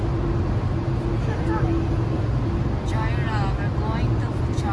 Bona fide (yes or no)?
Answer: yes